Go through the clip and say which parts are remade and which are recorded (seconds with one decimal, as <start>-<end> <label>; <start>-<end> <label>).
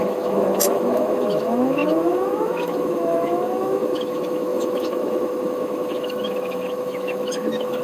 0.0-7.8 remade